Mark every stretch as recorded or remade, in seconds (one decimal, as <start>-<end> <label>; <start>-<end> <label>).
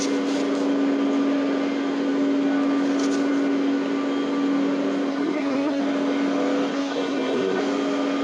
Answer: 0.0-5.1 recorded; 5.1-5.8 remade; 5.8-6.7 recorded; 6.7-7.6 remade; 7.6-8.2 recorded